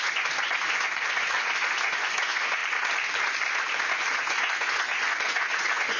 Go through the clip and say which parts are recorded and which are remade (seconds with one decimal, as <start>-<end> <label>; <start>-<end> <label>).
0.0-2.6 remade; 2.6-3.9 recorded; 3.9-6.0 remade